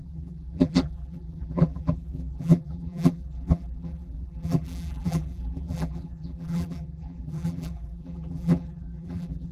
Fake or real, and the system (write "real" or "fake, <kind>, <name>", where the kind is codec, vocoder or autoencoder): fake, vocoder, BigVGAN v2